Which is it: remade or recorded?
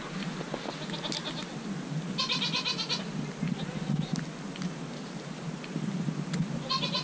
recorded